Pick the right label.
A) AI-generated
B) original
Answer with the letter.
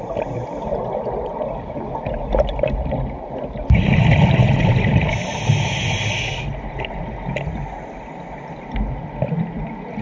B